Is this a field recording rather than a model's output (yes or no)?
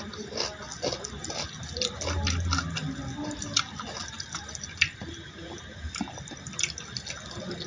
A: yes